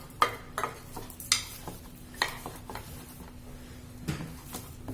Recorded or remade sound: recorded